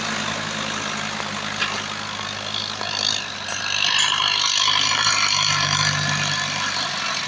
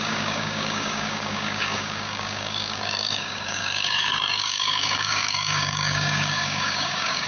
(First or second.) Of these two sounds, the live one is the first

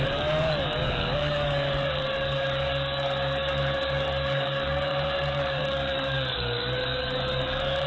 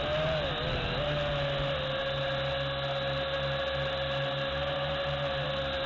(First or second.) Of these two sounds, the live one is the second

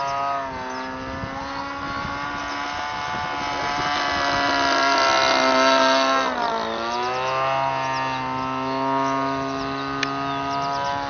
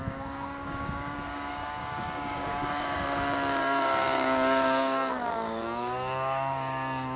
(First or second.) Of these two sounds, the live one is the first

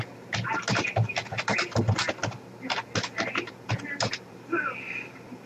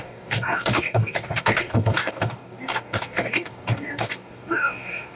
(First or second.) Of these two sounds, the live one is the first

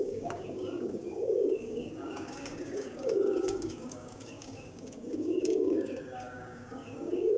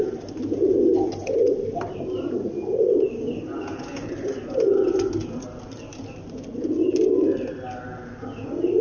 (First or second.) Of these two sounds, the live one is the second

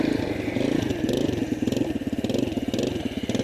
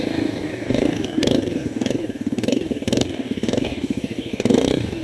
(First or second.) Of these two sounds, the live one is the first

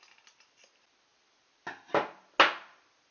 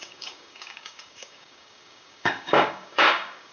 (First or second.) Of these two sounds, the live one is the first